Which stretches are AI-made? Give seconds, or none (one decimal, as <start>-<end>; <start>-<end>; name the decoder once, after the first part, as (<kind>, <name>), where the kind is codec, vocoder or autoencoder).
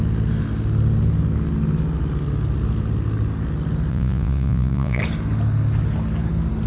3.9-5.0 (vocoder, Vocos)